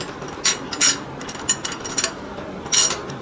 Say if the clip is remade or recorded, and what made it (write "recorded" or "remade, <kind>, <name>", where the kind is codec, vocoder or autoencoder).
recorded